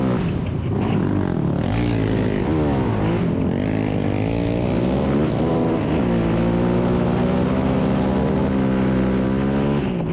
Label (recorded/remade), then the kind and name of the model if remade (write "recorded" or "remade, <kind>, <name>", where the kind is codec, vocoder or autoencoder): recorded